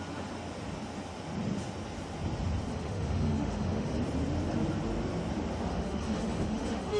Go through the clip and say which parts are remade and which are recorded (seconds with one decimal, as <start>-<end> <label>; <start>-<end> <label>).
0.0-2.7 recorded; 2.7-4.0 remade; 4.0-5.7 recorded; 5.7-7.0 remade